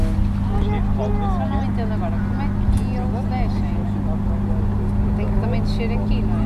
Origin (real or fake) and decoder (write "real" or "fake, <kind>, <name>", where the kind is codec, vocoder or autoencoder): real